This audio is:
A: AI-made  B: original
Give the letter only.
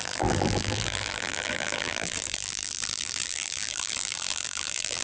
A